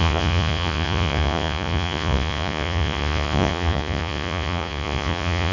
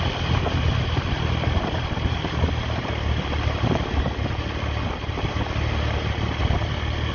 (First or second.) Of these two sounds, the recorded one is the second